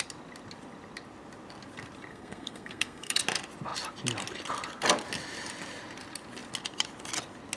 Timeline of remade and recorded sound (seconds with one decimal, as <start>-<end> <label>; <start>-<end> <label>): 0.0-2.1 recorded; 2.1-3.2 remade; 3.2-7.6 recorded